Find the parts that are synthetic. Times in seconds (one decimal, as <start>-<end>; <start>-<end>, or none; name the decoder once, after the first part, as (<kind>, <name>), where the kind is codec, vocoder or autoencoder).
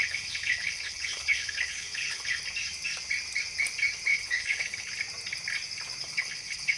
0.0-2.4 (codec, HILCodec); 4.1-4.9; 6.0-6.8